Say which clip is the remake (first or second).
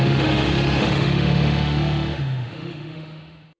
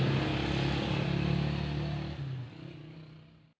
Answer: first